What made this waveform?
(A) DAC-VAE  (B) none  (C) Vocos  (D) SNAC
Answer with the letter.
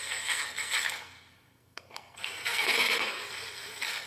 D